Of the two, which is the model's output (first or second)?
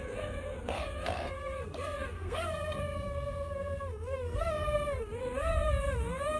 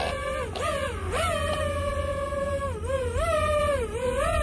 first